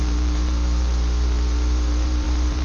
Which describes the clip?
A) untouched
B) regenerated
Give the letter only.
B